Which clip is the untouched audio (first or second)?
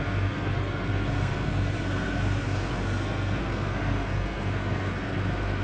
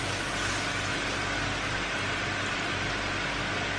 second